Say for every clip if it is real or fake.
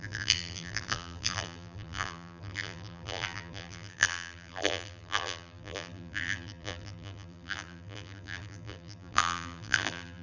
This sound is fake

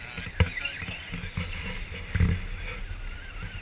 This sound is real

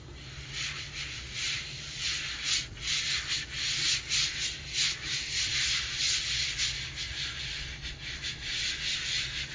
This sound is real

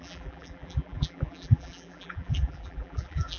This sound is fake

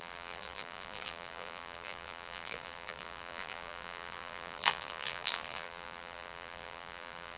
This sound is fake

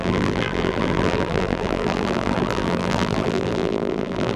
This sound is fake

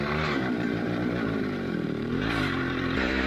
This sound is fake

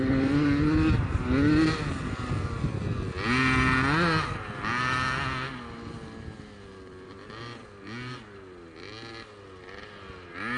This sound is real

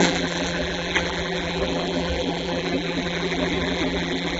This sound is fake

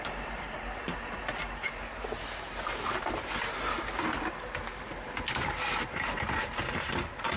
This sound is fake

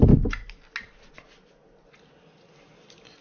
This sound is real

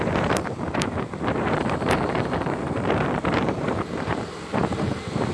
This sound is fake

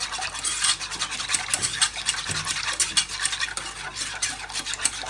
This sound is real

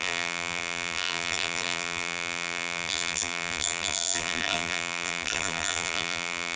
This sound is fake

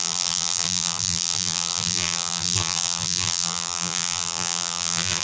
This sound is fake